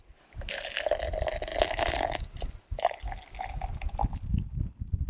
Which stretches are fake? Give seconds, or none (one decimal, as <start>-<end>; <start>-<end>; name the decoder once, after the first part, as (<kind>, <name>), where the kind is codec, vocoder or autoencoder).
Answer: none